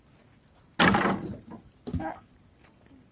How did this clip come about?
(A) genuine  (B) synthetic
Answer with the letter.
A